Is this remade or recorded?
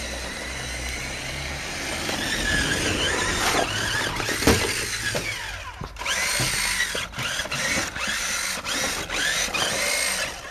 recorded